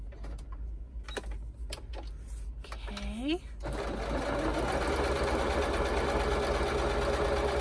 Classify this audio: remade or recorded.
recorded